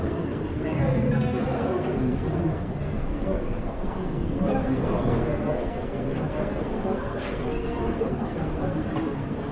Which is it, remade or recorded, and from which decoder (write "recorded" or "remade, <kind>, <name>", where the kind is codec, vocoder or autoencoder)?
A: remade, codec, SNAC